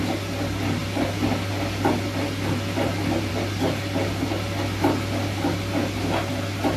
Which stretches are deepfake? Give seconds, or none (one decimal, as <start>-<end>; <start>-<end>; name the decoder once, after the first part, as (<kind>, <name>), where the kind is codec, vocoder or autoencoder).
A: none